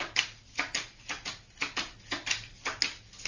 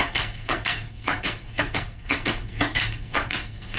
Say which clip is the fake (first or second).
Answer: second